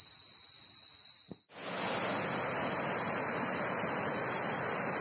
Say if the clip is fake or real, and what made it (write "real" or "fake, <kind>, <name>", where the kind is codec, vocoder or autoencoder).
real